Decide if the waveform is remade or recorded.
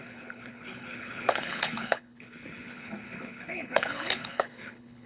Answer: remade